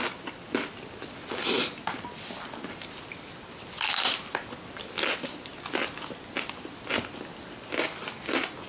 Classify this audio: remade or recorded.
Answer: recorded